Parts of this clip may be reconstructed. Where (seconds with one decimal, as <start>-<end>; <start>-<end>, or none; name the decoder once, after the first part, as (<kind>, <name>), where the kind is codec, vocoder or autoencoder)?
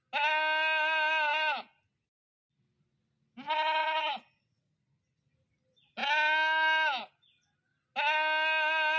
3.8-4.7 (vocoder, Vocos)